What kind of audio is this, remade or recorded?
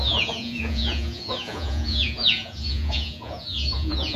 remade